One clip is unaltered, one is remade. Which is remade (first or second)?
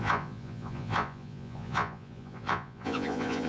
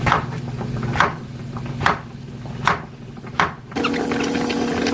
first